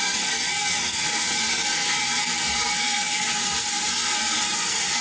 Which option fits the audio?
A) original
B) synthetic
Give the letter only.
B